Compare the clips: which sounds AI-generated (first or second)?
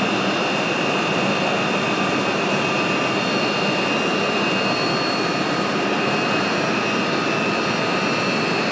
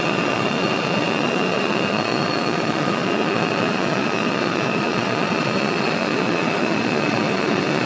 second